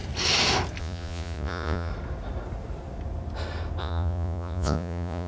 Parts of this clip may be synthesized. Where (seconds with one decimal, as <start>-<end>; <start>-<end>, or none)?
0.8-1.9; 3.8-5.3